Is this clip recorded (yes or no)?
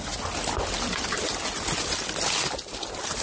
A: yes